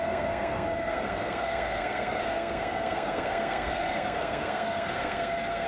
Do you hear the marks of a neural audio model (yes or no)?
yes